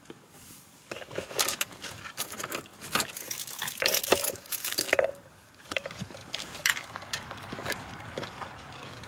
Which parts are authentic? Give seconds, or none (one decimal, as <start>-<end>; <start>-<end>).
none